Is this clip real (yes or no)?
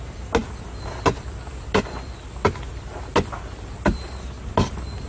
yes